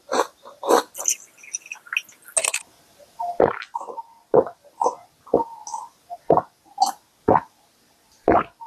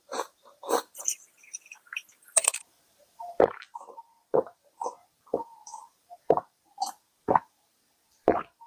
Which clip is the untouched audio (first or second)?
first